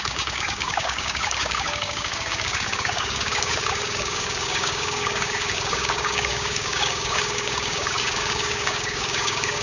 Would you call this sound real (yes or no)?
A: no